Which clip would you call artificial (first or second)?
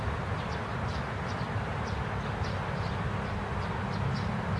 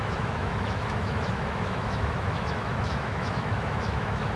second